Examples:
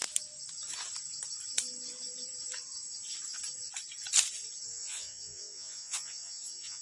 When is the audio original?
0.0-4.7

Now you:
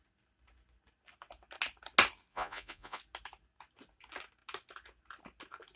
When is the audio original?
0.0-2.3; 3.0-5.8

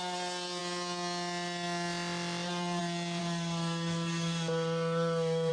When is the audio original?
0.0-3.2

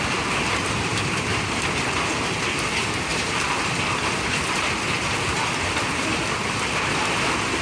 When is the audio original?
0.0-3.1

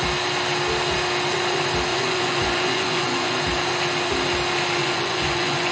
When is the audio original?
0.0-1.9; 3.4-4.8

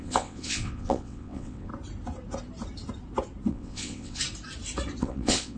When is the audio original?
1.7-3.5; 4.2-5.0

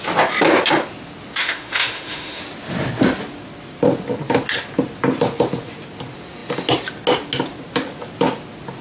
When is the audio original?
0.0-1.4; 2.4-8.8

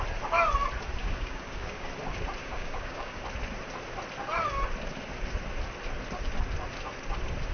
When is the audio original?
0.0-1.0; 1.9-2.4; 3.2-7.5